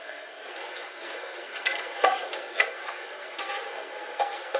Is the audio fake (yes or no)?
yes